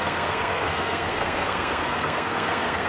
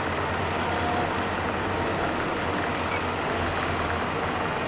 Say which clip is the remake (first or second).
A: first